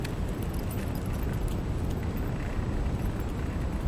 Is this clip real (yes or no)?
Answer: yes